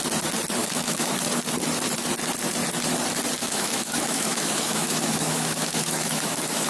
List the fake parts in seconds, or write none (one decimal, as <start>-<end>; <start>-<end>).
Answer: 0.6-1.1; 3.4-6.7